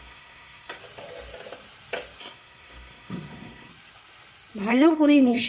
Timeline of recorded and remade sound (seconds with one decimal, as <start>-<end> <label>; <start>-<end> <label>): 0.0-0.8 remade; 0.8-2.2 recorded; 2.2-3.7 remade; 3.7-4.7 recorded; 4.7-5.5 remade